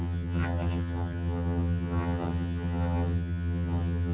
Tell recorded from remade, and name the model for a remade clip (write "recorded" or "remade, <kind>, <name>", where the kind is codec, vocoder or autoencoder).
remade, vocoder, HiFi-GAN